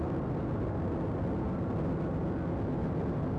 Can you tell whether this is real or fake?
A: real